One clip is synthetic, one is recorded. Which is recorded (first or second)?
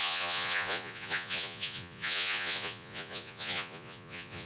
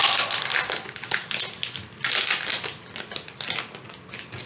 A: second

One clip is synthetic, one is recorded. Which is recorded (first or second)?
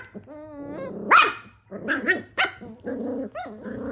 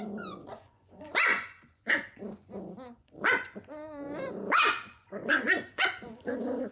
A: first